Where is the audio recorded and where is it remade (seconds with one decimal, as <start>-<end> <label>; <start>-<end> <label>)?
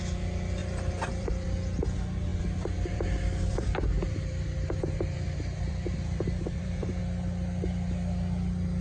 0.0-0.6 recorded; 0.6-1.3 remade; 1.3-2.3 recorded; 2.3-7.0 remade; 7.0-8.8 recorded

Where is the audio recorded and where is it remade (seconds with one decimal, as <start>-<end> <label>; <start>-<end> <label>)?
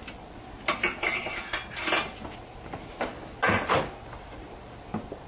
0.0-5.3 recorded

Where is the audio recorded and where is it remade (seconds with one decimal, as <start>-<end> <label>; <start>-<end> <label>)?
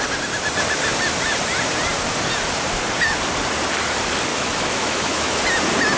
0.0-4.3 recorded; 4.3-5.4 remade; 5.4-6.0 recorded